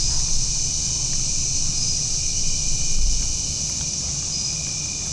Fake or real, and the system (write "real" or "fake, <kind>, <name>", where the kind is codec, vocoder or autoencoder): real